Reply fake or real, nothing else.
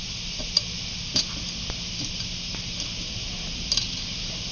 real